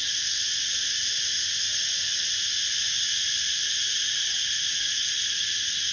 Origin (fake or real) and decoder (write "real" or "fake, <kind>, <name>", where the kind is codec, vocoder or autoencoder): real